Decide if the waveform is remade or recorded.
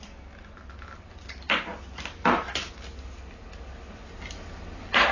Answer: recorded